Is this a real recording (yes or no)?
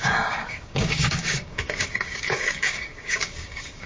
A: no